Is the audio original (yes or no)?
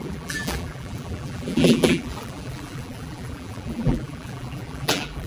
no